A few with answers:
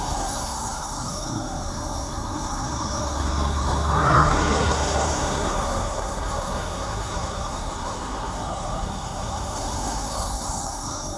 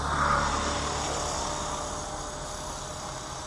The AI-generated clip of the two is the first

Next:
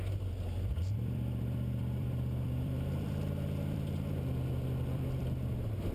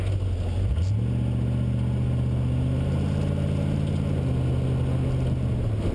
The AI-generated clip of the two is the first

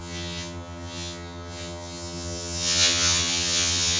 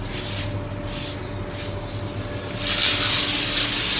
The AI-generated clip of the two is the first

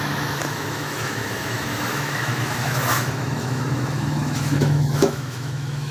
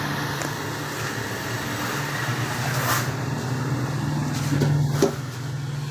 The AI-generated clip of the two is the first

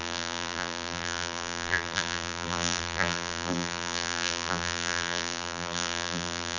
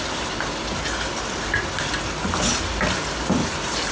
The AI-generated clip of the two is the first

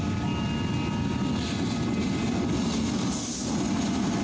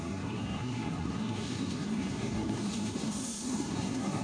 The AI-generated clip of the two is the second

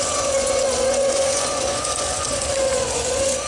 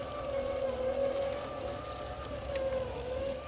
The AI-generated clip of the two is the first